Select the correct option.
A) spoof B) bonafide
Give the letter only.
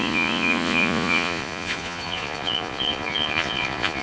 A